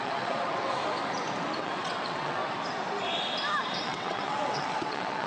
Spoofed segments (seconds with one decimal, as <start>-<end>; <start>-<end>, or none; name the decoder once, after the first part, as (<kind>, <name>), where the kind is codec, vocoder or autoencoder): 0.0-0.8 (vocoder, WaveNeXt); 1.6-2.4; 3.7-5.3